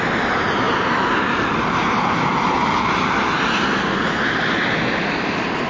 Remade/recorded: remade